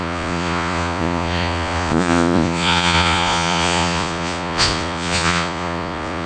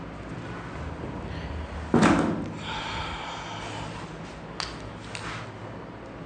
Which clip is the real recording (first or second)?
second